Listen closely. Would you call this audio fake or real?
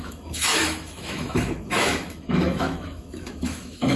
fake